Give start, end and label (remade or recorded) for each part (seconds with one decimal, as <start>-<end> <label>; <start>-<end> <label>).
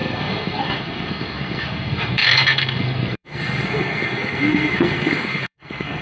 0.0-6.0 remade